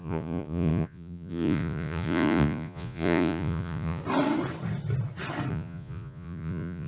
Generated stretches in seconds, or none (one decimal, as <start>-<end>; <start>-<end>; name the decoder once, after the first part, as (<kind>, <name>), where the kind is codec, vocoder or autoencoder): 0.0-4.0 (vocoder, Vocos); 5.5-6.9